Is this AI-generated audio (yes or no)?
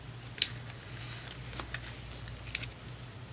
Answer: no